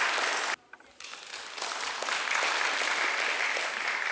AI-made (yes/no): no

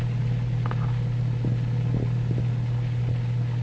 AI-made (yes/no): no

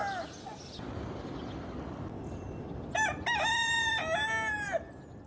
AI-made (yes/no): no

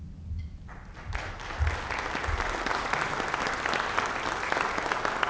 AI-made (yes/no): no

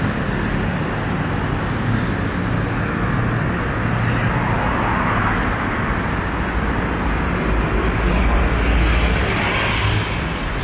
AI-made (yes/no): no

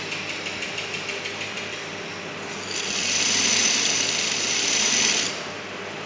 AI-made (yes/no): no